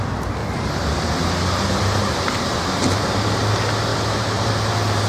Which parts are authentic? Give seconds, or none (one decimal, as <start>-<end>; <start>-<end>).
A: 0.0-0.4; 3.5-3.9; 4.5-5.1